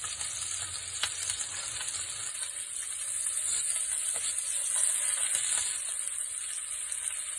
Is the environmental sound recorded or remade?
recorded